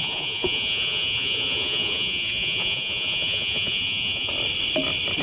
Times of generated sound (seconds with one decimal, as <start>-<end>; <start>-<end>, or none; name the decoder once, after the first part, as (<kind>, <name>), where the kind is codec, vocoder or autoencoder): 0.0-4.3 (vocoder, Vocos)